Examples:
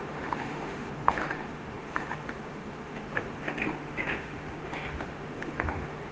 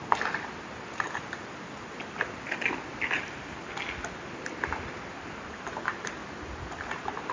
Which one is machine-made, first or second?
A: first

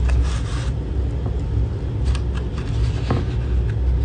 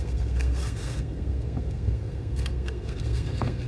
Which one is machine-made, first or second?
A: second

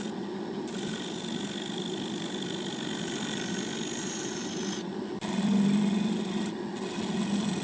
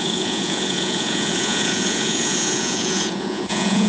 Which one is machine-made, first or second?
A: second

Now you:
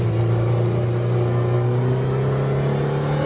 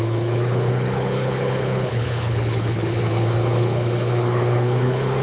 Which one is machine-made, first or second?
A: second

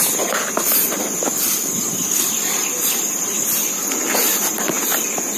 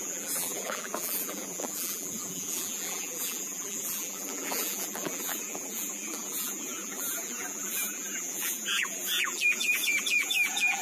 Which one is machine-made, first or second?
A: second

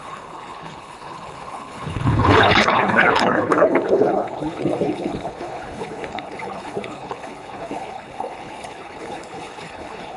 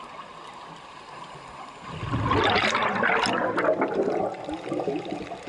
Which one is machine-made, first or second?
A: first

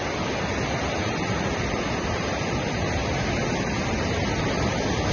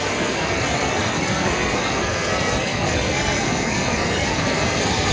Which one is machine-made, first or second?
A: second